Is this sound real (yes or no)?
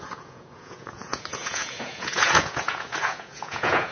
no